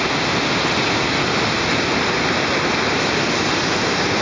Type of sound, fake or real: real